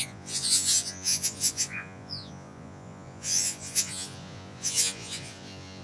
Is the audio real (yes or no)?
no